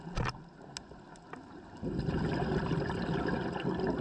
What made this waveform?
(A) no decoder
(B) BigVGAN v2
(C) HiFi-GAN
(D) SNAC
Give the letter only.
A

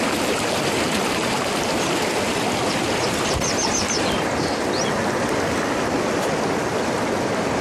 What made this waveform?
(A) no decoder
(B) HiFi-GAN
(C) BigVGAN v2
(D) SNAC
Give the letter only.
A